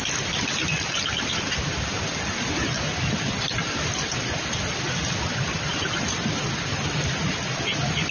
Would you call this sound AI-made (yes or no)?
no